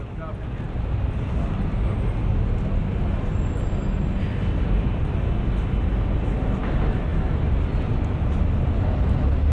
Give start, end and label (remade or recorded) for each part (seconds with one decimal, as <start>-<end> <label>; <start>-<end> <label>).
0.0-9.5 recorded